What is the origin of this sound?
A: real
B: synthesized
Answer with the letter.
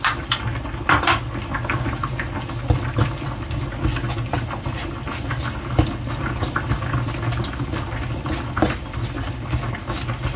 A